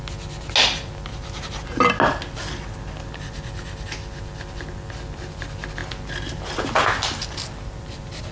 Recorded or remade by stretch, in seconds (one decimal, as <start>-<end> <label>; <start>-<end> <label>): 0.0-8.3 recorded